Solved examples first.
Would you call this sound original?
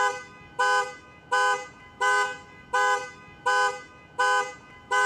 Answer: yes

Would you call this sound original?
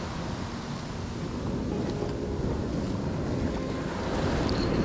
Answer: yes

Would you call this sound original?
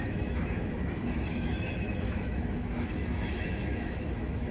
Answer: no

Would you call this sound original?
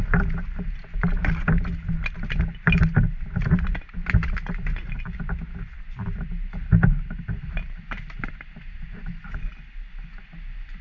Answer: yes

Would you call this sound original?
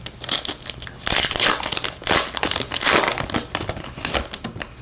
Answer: yes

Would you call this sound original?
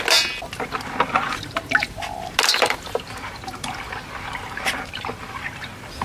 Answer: yes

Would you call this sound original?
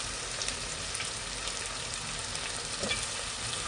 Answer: yes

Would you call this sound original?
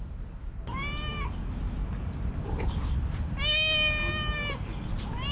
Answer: yes